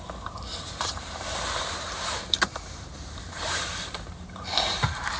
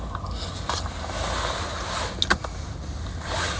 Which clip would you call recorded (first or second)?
second